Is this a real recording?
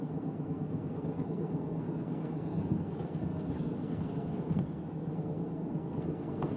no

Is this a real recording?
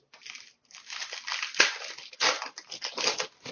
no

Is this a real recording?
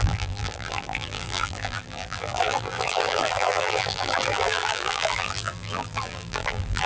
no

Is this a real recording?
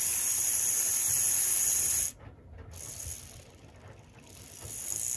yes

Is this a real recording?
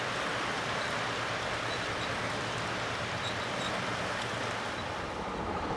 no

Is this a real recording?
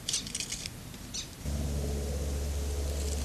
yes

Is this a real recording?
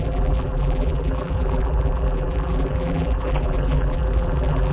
no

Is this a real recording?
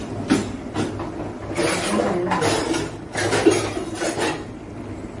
yes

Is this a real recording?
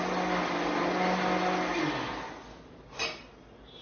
yes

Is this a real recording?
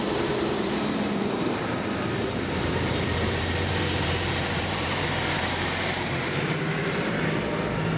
no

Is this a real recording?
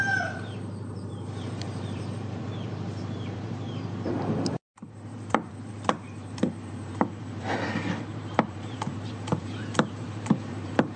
no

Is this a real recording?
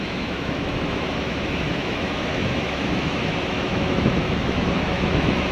no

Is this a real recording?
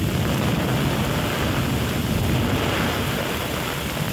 yes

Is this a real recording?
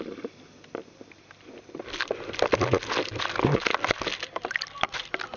yes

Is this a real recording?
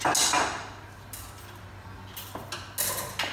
yes